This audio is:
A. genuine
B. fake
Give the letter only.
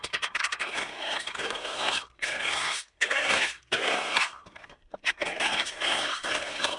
B